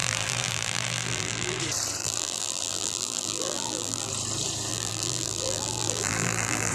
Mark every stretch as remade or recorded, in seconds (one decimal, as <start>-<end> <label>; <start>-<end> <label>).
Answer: 0.0-1.6 remade; 1.6-2.0 recorded; 2.0-4.1 remade; 4.1-4.7 recorded; 4.7-6.7 remade